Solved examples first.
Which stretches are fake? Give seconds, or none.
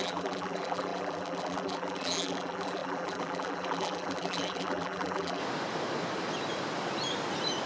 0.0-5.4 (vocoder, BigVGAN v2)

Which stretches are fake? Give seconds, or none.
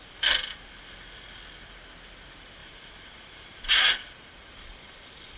2.6-3.6 (vocoder, BigVGAN v2)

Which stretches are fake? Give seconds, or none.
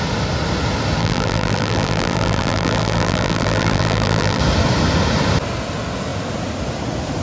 1.0-4.4 (vocoder, BigVGAN v2)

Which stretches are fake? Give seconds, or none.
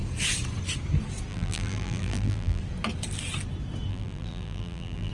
1.3-2.6 (vocoder, BigVGAN v2); 3.9-5.1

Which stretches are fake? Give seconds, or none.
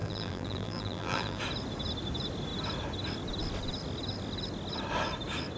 0.0-1.4 (vocoder, BigVGAN v2)